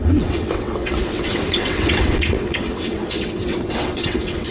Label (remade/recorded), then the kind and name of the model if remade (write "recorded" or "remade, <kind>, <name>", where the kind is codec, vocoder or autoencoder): remade, vocoder, WaveNeXt